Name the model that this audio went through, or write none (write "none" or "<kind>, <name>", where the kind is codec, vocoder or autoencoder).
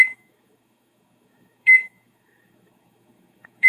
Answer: autoencoder, DAC-VAE